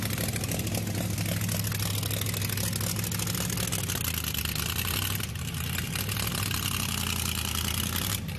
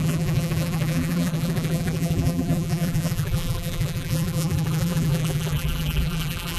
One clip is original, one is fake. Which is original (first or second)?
first